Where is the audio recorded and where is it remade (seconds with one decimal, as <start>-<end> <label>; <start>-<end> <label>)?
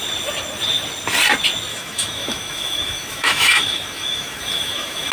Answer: 0.0-1.7 recorded; 1.7-5.1 remade